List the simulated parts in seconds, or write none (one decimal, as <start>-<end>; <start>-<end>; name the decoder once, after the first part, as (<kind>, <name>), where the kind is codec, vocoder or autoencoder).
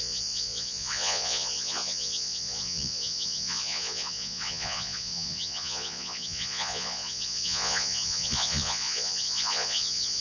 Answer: 0.0-10.2 (vocoder, Vocos)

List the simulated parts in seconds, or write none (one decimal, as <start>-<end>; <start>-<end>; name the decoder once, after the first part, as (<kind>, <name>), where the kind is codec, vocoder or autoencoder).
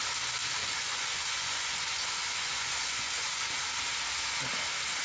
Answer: 0.6-3.5 (vocoder, Vocos)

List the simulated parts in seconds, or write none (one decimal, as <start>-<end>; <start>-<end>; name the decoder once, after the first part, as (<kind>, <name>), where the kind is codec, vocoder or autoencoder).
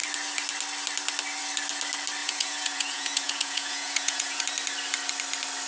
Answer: 2.2-4.4 (vocoder, Vocos)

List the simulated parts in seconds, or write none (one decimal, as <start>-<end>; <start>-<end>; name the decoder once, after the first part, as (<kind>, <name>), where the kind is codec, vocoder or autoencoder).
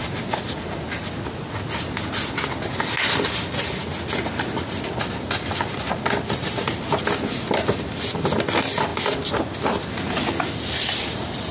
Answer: none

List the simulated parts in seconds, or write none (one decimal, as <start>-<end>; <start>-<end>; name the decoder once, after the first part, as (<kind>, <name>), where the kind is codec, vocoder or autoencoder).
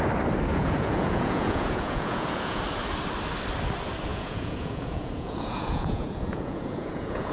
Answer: 0.5-2.6 (vocoder, Vocos); 4.1-7.3